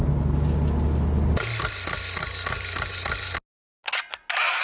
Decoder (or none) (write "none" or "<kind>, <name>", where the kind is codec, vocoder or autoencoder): none